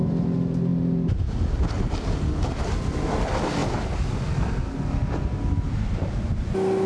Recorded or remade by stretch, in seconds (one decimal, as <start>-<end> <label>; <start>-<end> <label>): 0.0-6.9 recorded